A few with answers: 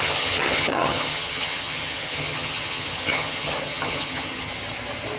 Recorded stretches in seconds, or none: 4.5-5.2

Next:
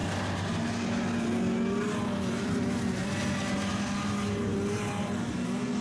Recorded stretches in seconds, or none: 0.0-5.8

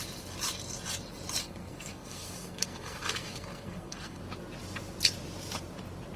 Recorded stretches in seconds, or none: 0.0-1.4; 4.2-6.2

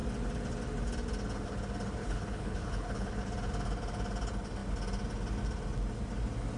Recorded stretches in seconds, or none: 0.0-2.0; 3.2-6.6

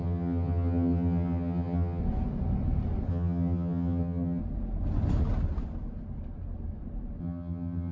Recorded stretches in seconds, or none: 2.0-3.1; 4.4-7.2

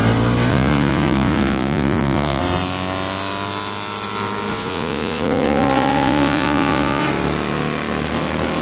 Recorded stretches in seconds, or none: 0.0-0.5; 2.4-4.5; 7.0-8.6